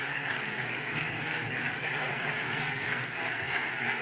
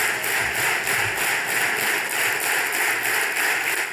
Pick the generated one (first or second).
first